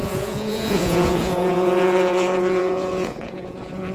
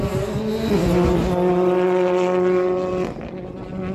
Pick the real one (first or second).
second